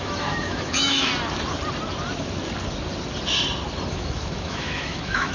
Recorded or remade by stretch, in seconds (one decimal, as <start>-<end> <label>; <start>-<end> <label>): 0.0-1.1 remade; 1.1-3.9 recorded; 3.9-5.3 remade